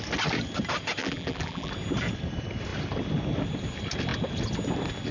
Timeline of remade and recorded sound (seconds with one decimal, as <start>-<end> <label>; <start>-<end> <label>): 0.0-1.0 recorded; 1.0-1.7 remade; 1.7-5.1 recorded